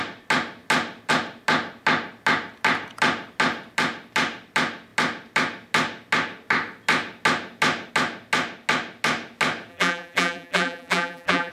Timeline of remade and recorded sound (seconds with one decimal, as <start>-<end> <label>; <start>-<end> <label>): 0.0-9.7 recorded; 9.7-11.5 remade